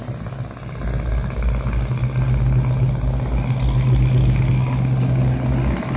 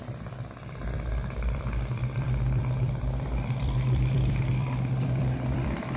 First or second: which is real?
first